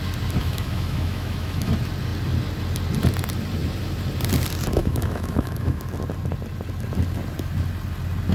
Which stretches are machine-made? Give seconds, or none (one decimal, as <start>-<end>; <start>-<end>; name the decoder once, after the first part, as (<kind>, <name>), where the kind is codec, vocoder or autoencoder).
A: 0.4-1.7 (autoencoder, DAC-VAE); 4.8-5.8